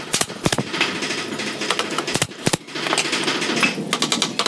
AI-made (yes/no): no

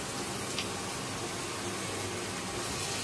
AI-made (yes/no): no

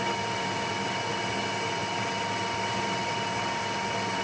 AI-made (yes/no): no